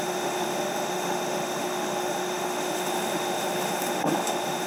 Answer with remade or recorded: remade